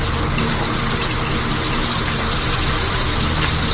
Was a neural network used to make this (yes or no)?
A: yes